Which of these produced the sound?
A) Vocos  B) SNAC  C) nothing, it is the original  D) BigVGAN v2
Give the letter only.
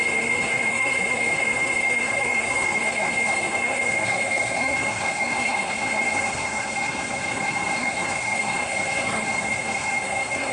B